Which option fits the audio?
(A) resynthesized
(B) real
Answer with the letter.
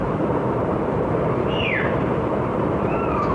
A